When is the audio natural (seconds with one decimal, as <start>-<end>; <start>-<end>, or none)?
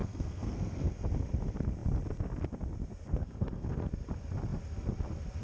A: 1.1-3.1; 3.9-5.4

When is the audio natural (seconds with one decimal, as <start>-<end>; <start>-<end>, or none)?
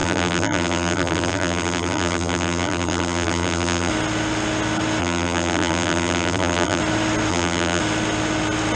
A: 3.9-5.0; 6.8-7.3; 7.8-8.8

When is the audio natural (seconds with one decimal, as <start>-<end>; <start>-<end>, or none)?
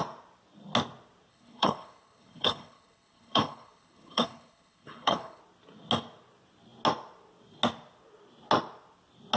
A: 0.0-1.3; 5.4-9.4